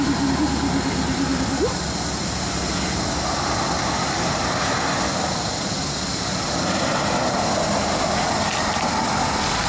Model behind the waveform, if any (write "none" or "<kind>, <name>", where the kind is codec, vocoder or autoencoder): none